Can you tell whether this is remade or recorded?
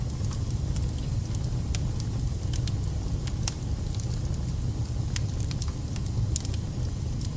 recorded